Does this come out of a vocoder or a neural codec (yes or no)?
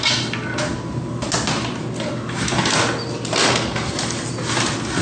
no